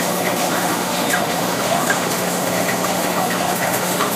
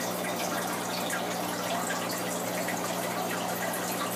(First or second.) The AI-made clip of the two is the first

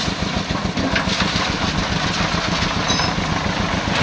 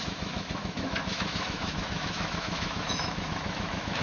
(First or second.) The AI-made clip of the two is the second